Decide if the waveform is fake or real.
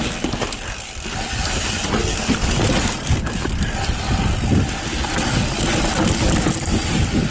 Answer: real